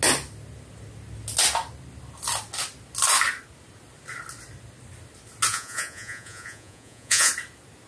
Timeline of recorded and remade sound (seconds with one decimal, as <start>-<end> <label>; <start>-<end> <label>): 0.0-5.5 recorded; 5.5-7.3 remade; 7.3-7.9 recorded